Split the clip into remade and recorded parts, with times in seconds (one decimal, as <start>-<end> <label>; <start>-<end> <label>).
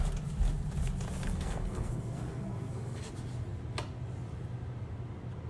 0.0-1.2 recorded; 1.2-3.1 remade; 3.1-5.5 recorded